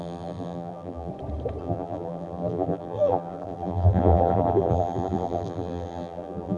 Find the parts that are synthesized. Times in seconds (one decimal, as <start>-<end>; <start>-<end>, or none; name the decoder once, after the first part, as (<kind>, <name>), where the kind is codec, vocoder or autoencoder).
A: 0.0-1.1 (vocoder, BigVGAN v2); 1.6-6.6